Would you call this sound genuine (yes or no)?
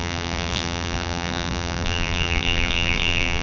no